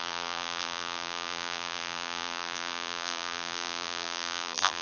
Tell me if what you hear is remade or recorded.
remade